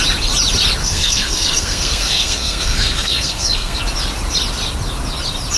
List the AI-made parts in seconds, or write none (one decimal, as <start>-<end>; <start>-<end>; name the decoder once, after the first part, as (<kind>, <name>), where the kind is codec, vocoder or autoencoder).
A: 0.8-3.8 (codec, SNAC)